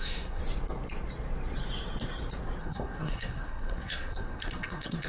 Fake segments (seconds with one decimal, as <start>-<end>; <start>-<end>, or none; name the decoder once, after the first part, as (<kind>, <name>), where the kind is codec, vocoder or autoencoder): 0.0-0.4 (codec, SNAC); 2.6-5.1